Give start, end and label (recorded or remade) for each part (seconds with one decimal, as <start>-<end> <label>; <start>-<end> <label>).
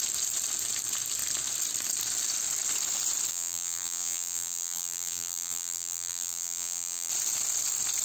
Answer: 0.0-3.3 recorded; 3.3-7.1 remade; 7.1-8.0 recorded